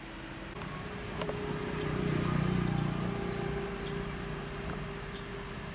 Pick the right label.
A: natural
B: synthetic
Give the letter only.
A